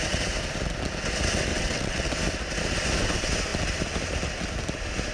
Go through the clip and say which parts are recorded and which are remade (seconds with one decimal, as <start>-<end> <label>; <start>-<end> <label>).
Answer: 0.0-1.5 recorded; 1.5-2.1 remade; 2.1-5.1 recorded